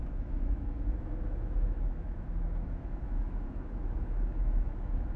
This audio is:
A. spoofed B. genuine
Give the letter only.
A